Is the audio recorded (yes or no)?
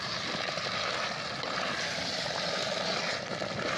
yes